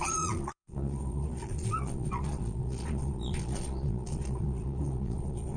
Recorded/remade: remade